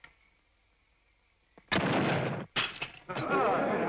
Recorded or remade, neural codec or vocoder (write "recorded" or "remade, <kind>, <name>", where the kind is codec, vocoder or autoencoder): recorded